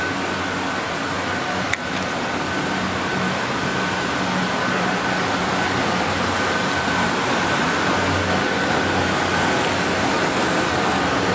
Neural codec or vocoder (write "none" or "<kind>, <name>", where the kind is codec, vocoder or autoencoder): none